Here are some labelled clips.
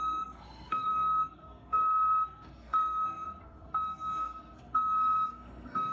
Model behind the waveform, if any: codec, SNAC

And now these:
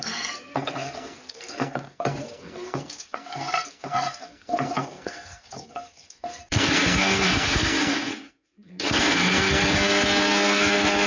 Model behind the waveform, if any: codec, SNAC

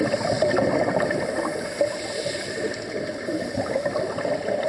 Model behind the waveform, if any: none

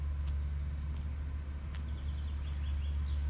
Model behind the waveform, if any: none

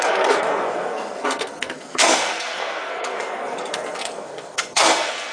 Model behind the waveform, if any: codec, SNAC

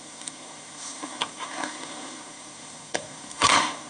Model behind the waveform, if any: codec, SNAC